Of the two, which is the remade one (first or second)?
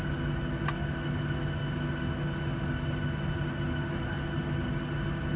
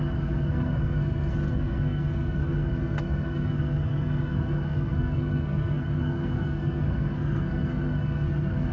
second